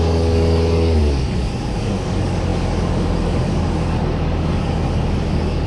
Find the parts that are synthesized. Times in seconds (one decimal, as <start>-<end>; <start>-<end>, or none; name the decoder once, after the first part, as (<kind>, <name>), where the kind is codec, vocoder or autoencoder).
0.0-5.7 (codec, DAC)